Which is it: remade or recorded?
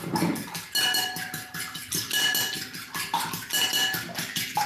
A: recorded